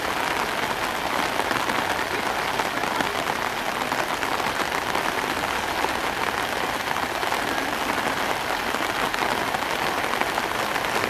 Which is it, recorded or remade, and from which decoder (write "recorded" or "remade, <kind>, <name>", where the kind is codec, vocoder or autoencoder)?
recorded